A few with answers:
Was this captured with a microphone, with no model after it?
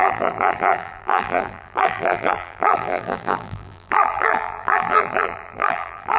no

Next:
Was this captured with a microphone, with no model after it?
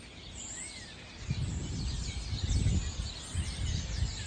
yes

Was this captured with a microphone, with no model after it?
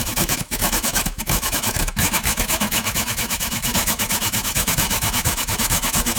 no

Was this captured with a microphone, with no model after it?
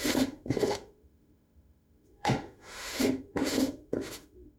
no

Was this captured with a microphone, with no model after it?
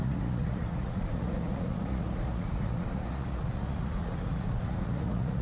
no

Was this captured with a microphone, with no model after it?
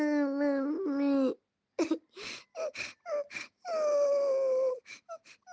yes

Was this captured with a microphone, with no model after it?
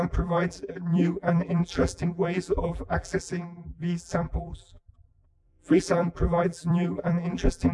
no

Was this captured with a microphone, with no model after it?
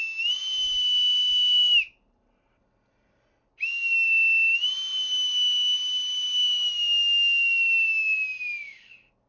yes